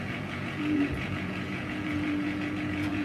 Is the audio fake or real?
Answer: fake